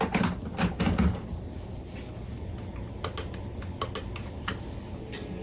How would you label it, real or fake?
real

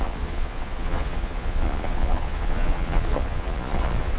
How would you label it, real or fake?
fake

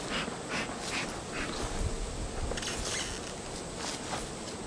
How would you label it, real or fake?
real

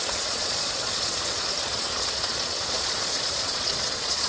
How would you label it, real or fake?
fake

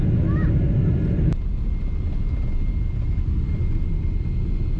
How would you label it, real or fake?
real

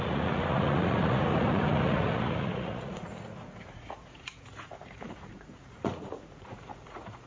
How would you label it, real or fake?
fake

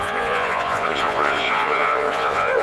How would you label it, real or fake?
fake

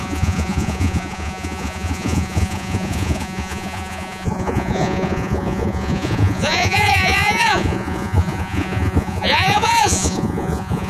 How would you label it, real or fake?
fake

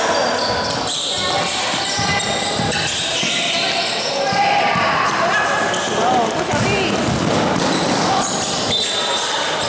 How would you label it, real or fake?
real